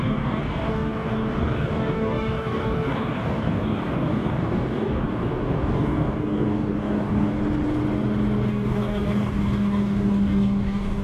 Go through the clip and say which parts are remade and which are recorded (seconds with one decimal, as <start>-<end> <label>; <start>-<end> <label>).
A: 0.0-7.4 remade; 7.4-8.5 recorded; 8.5-11.0 remade